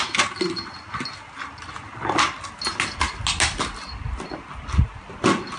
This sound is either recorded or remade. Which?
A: recorded